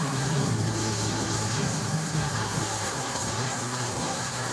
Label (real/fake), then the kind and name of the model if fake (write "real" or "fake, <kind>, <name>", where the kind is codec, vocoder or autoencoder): fake, codec, SNAC